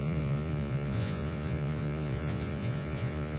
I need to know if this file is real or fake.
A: fake